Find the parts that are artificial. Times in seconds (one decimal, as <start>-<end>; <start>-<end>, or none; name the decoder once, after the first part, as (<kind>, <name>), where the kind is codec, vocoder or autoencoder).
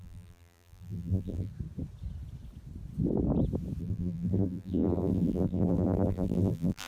0.0-1.5 (vocoder, BigVGAN v2); 3.8-6.9